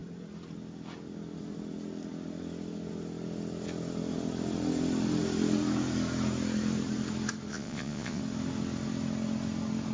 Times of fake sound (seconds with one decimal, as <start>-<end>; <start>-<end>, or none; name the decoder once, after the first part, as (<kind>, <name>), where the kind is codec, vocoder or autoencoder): 7.5-8.2 (vocoder, Vocos)